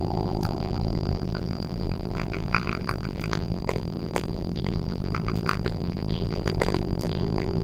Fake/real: fake